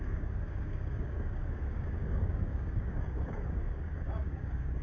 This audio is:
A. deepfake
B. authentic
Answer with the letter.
A